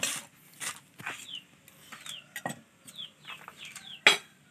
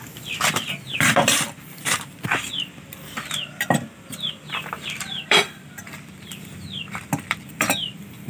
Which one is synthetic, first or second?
second